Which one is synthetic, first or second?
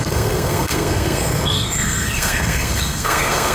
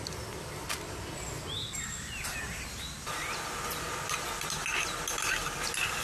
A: first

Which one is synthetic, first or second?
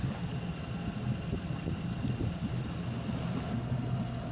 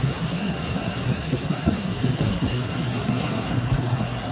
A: second